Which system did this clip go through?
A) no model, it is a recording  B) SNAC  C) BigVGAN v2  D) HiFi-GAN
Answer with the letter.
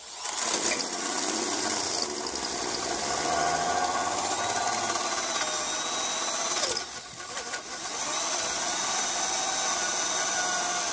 A